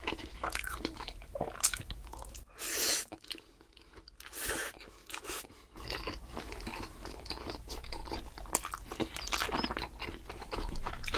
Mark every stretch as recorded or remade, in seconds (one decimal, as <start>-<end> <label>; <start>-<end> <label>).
0.0-8.0 remade; 8.0-10.3 recorded; 10.3-11.2 remade